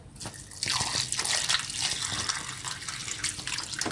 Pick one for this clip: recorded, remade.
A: recorded